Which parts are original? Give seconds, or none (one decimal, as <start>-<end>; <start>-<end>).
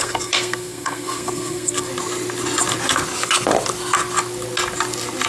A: 1.9-5.3